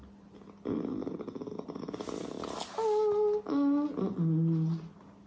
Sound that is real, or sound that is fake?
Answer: real